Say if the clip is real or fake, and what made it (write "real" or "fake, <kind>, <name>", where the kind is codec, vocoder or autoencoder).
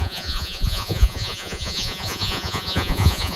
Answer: fake, vocoder, Vocos